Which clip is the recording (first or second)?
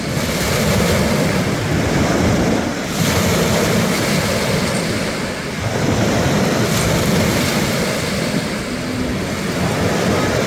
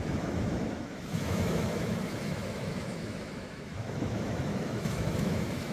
first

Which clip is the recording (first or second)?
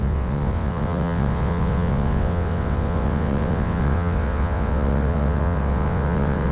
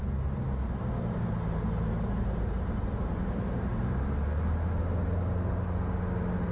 second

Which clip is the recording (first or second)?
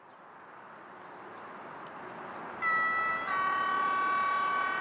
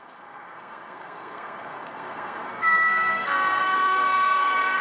first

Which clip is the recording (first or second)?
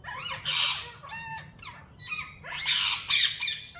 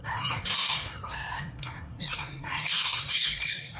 first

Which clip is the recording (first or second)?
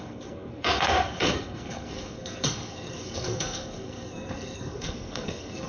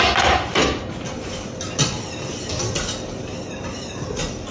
second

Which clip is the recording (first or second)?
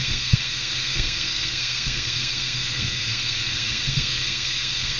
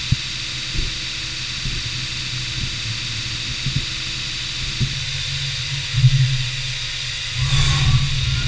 second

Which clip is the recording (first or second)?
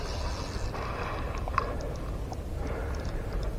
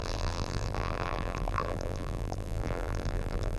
first